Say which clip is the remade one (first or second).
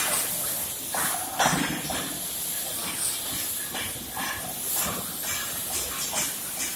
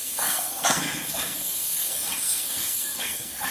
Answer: second